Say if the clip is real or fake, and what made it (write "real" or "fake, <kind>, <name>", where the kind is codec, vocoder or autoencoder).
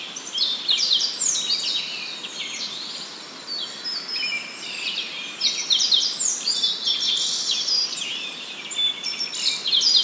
real